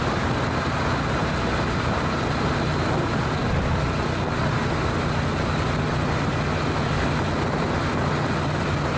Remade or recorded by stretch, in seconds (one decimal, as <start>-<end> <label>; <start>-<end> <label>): 0.0-9.0 recorded